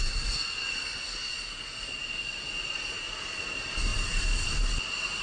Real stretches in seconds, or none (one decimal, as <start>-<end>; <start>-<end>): 0.0-5.2